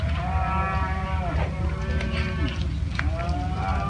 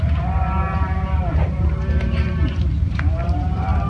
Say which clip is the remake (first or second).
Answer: second